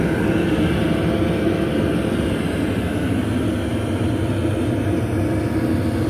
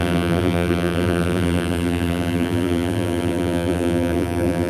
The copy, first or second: second